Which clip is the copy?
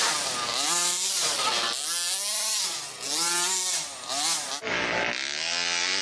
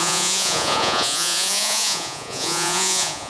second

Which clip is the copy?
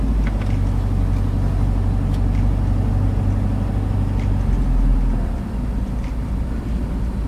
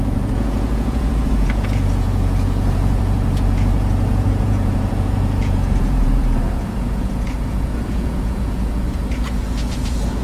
second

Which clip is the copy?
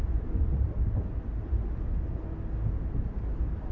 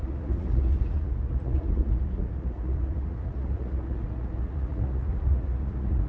second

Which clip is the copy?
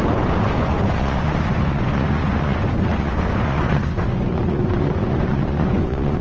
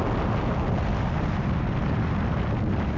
first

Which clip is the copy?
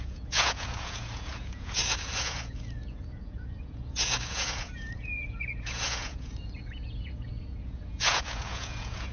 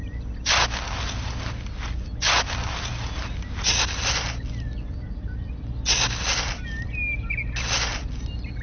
first